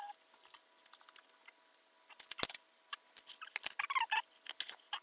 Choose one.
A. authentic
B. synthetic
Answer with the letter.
A